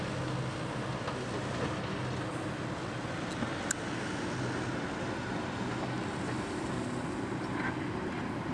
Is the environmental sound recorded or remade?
recorded